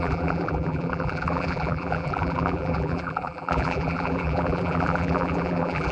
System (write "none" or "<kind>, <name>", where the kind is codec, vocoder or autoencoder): vocoder, BigVGAN v2